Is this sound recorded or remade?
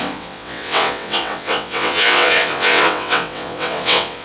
remade